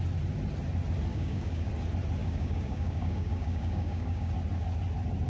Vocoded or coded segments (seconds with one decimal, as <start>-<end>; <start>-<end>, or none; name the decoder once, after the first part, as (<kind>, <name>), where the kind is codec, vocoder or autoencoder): 1.1-1.7 (codec, DAC); 2.2-4.3